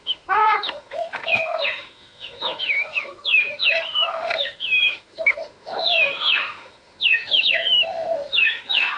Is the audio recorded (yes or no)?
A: no